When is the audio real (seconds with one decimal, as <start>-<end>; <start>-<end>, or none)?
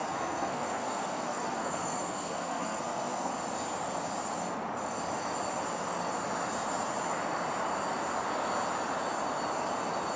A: 3.3-10.2